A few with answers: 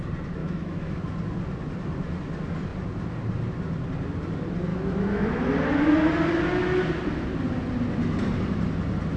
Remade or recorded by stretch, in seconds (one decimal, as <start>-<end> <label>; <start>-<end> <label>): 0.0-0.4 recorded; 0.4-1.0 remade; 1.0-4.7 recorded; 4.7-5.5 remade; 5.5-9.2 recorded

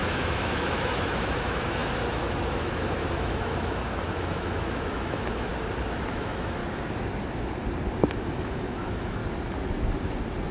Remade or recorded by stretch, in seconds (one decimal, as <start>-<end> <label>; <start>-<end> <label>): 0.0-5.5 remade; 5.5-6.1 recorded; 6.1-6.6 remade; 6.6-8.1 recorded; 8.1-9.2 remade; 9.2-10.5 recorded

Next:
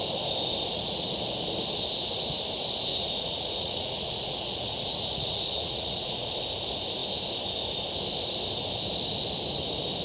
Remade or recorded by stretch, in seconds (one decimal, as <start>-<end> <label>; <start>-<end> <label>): 0.0-0.7 recorded; 0.7-1.2 remade; 1.2-2.9 recorded; 2.9-6.3 remade; 6.3-10.0 recorded

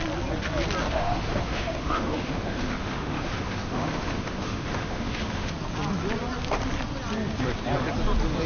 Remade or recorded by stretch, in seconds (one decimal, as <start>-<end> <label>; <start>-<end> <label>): 0.0-0.8 recorded; 0.8-5.5 remade; 5.5-8.5 recorded

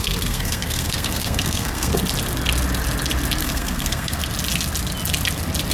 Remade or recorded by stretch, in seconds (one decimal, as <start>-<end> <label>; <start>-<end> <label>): 0.0-1.9 remade; 1.9-3.4 recorded; 3.4-4.2 remade; 4.2-5.7 recorded

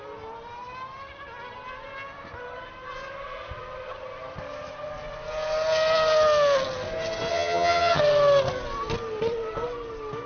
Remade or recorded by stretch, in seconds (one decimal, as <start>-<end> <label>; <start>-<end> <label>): 0.0-7.3 recorded; 7.3-8.0 remade; 8.0-10.3 recorded